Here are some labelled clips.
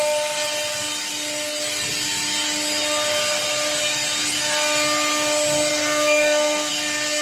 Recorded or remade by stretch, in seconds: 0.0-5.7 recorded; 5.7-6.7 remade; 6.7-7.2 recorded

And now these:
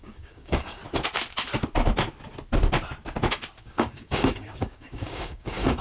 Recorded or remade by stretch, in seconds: 0.0-0.8 remade; 0.8-3.6 recorded; 3.6-5.8 remade

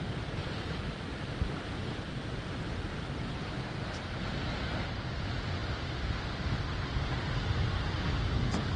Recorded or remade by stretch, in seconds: 0.0-0.4 recorded; 0.4-1.6 remade; 1.6-8.8 recorded